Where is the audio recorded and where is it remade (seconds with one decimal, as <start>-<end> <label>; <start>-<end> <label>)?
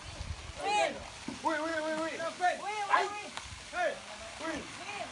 0.0-1.7 recorded; 1.7-5.1 remade